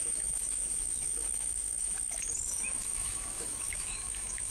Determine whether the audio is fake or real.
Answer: fake